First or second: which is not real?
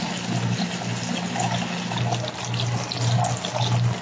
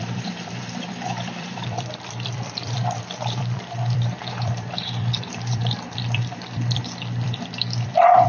second